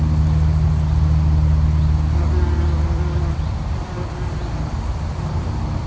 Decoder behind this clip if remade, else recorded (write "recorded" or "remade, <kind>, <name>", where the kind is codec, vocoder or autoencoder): recorded